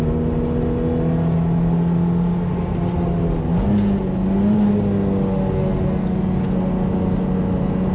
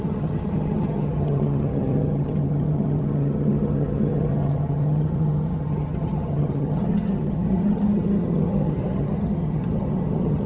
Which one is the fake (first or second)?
second